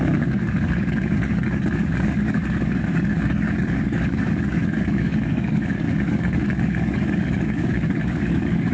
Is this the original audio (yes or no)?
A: no